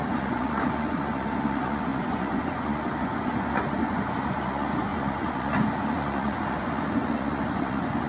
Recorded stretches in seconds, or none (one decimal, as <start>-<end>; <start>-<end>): none